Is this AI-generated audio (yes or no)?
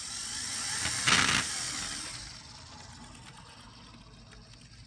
no